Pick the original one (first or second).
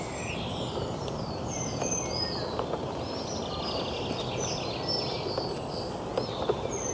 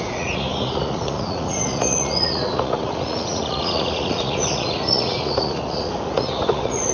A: first